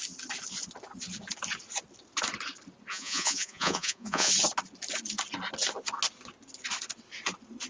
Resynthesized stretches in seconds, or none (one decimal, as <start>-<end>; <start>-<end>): 2.9-4.3